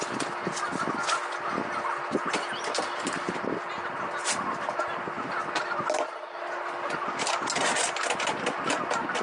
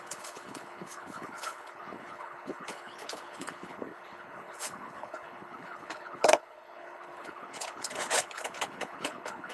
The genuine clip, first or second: first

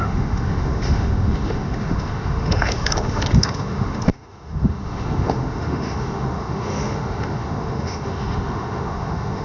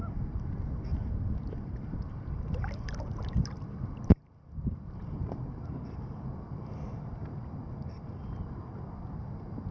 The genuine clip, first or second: second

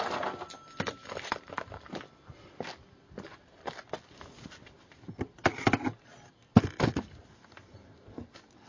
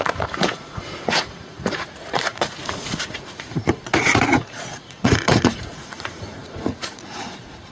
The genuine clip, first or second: first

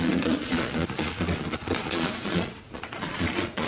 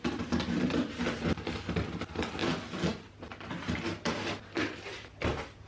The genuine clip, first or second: second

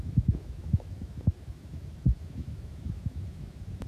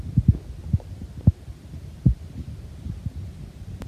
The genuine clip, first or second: second